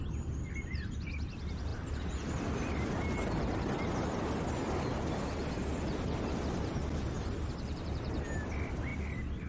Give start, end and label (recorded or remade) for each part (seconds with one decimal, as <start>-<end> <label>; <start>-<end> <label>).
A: 0.0-9.5 recorded